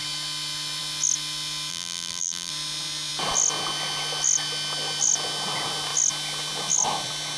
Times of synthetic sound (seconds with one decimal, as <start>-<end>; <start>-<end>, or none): 1.7-2.5